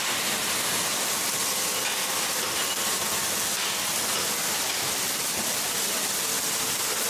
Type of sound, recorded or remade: recorded